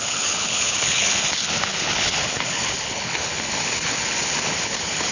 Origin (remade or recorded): remade